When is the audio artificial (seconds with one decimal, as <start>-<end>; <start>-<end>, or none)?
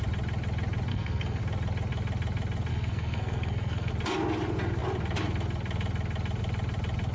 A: 0.9-1.4; 2.7-3.9